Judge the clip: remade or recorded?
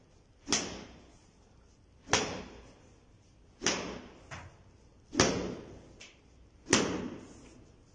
recorded